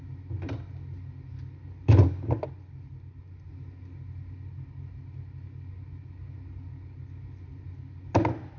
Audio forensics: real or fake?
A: real